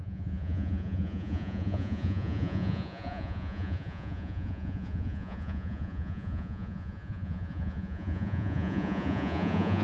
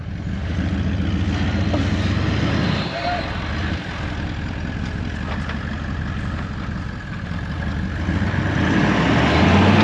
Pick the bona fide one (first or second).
second